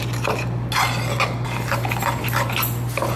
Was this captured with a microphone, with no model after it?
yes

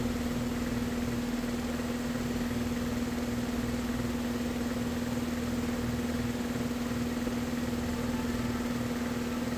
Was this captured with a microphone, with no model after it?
yes